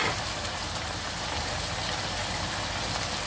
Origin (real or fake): real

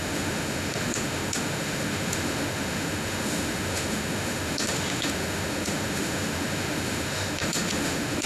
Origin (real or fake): fake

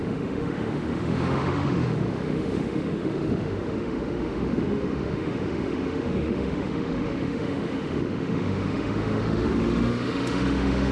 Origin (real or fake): fake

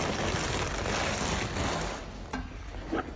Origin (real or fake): real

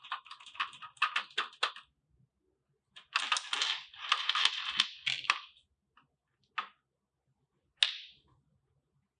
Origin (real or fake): real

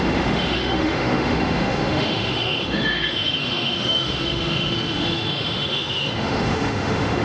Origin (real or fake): fake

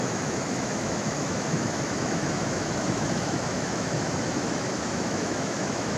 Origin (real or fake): fake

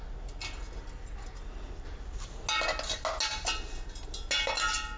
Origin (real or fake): real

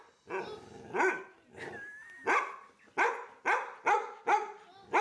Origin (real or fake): real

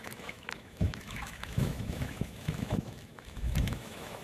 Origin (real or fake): fake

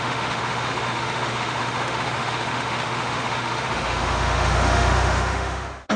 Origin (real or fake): fake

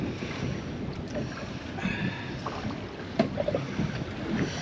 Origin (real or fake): real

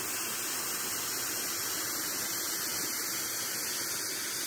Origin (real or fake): real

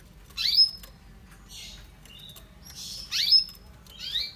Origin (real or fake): real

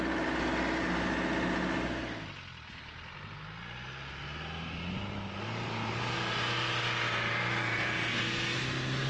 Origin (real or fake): real